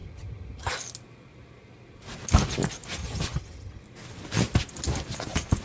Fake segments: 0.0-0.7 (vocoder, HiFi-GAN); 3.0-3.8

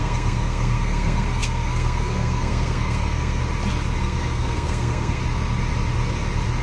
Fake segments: 0.0-3.4 (codec, SNAC); 4.0-5.2

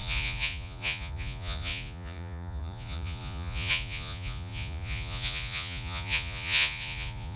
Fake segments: 0.0-7.4 (vocoder, Vocos)

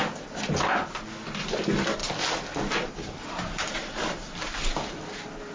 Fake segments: 2.0-4.9 (vocoder, BigVGAN v2)

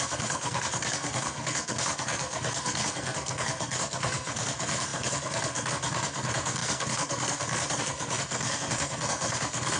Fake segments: 0.0-9.8 (codec, SNAC)

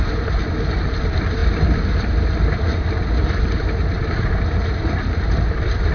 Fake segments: none